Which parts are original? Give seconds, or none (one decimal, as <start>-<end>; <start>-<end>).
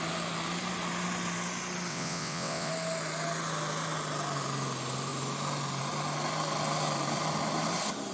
0.0-1.9; 2.7-8.1